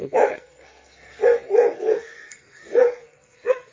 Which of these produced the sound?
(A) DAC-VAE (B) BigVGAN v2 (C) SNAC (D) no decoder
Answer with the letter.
C